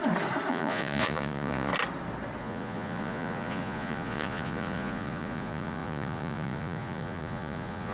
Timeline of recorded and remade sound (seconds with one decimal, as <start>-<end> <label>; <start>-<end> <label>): 0.0-0.5 recorded; 0.5-1.7 remade; 1.7-2.4 recorded; 2.4-7.9 remade